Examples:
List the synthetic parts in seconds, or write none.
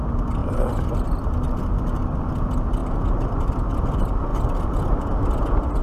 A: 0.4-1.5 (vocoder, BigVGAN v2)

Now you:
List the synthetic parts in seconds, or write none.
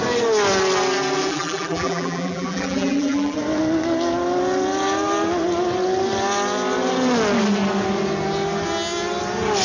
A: 1.3-3.4 (vocoder, BigVGAN v2)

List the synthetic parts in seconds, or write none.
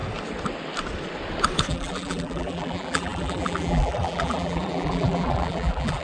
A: 1.7-6.0 (vocoder, BigVGAN v2)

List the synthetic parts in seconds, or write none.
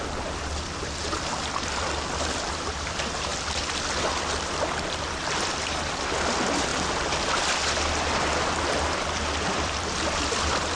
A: 0.0-3.3 (vocoder, BigVGAN v2); 5.5-6.7; 8.7-10.8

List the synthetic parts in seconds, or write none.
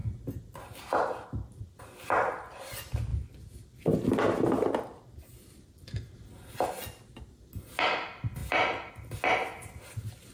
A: none